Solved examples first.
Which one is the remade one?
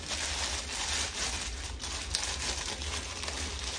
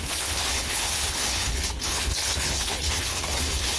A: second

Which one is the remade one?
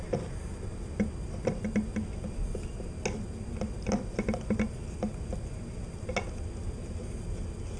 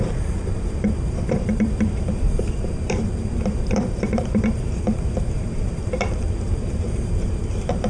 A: second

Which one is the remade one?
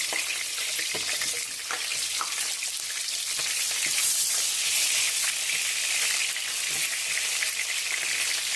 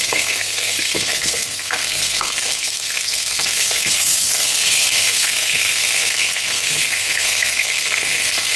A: second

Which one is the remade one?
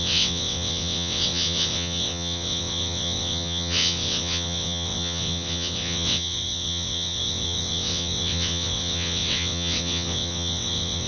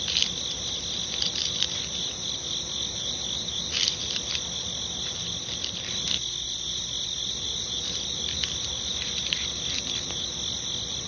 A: first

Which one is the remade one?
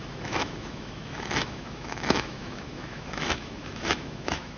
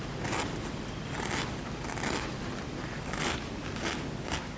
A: first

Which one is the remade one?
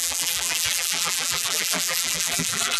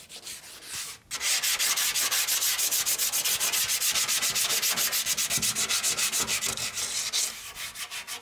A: first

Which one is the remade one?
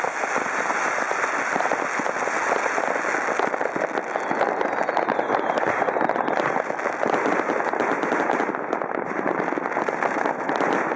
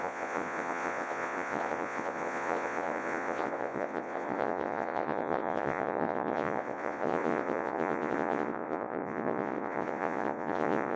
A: second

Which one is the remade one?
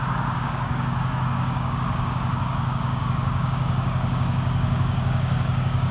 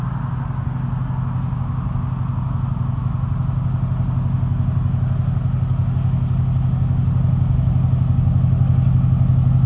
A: first